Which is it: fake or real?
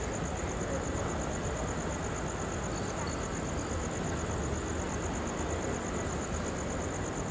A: real